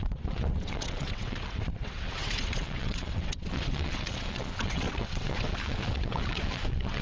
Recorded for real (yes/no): no